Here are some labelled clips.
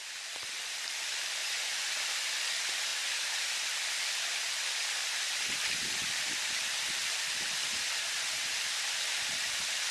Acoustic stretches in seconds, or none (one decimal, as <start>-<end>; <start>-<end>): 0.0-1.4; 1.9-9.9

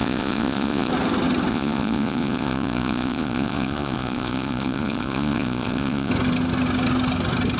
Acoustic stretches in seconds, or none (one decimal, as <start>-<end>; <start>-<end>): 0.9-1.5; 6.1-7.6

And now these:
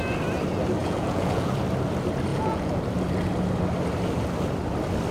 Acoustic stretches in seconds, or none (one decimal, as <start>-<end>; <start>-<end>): 0.0-0.8; 1.6-2.3; 2.8-5.1

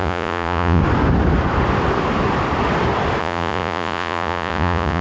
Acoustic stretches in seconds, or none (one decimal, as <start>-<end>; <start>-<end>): 0.8-3.2